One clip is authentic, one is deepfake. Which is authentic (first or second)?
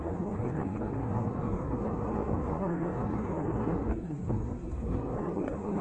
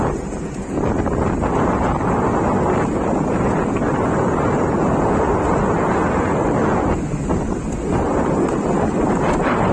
second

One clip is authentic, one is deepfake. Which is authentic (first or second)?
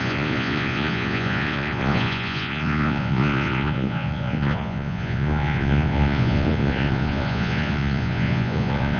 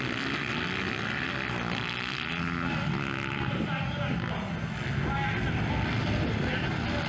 second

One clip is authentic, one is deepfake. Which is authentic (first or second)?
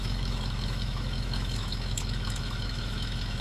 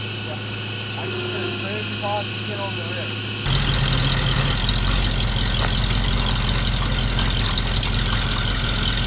second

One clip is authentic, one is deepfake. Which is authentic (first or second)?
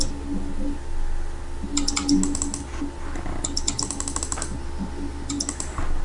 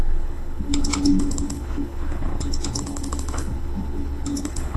first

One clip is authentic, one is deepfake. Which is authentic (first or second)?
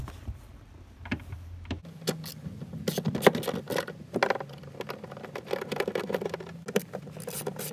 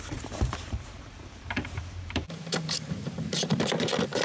first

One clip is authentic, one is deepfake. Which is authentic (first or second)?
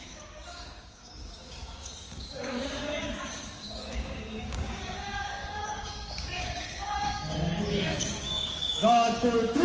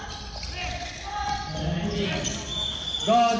second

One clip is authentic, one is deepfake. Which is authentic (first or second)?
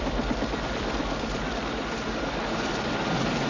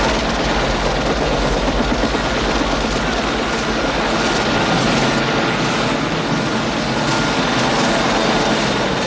second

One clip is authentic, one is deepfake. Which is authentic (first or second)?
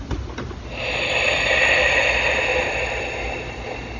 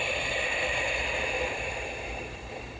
first